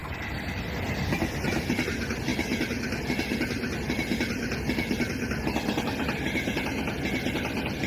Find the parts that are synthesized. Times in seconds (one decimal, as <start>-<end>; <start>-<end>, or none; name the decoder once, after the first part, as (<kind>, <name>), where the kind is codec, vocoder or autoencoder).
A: none